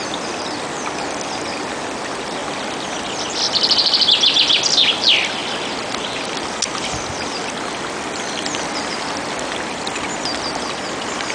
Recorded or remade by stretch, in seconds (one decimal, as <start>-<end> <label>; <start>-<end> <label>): 0.0-11.3 recorded